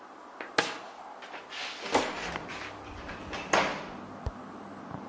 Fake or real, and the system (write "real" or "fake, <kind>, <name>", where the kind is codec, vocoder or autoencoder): real